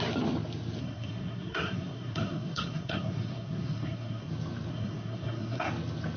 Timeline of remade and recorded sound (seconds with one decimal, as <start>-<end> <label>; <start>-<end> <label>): 0.0-0.8 recorded; 0.8-4.3 remade; 4.3-4.7 recorded; 4.7-5.7 remade; 5.7-6.2 recorded